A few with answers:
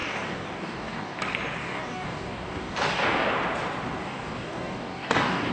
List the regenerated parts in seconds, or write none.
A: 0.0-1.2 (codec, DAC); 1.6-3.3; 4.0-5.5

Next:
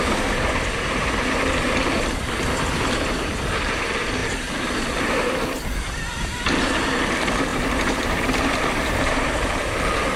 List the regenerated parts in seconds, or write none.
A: 7.5-10.2 (vocoder, BigVGAN v2)

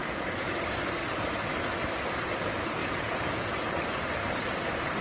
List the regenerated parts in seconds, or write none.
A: 0.0-0.5 (vocoder, Vocos); 2.8-3.5

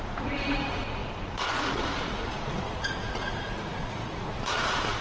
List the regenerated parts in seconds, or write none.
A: 0.0-5.0 (vocoder, Vocos)

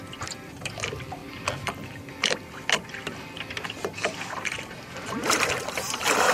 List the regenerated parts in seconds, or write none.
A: 0.0-1.2 (vocoder, BigVGAN v2); 2.5-6.3

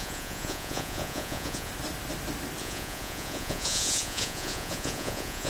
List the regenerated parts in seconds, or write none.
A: 0.0-1.7 (vocoder, Vocos); 2.6-5.5

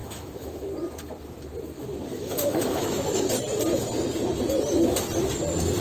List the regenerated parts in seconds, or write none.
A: 0.0-0.7 (autoencoder, DAC-VAE); 2.1-3.3

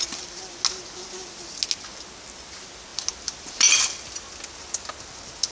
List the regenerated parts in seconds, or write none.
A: none